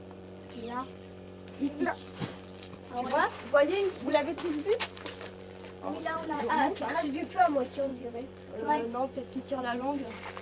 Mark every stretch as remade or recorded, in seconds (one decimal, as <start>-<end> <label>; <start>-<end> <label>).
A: 0.0-1.1 remade; 1.1-1.9 recorded; 1.9-10.4 remade